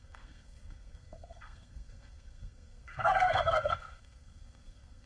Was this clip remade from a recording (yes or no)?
yes